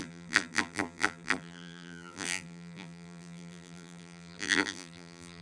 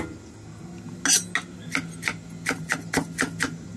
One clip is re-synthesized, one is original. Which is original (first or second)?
second